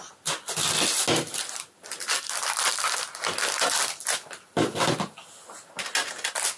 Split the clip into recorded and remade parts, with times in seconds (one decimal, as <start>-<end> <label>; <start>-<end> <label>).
0.0-6.6 recorded